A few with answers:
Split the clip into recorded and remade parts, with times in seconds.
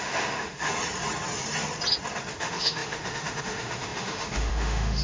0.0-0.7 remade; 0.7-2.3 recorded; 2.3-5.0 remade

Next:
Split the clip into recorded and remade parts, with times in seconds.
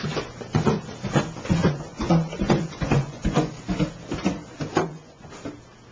0.0-1.6 recorded; 1.6-3.5 remade; 3.5-4.8 recorded; 4.8-5.3 remade; 5.3-5.9 recorded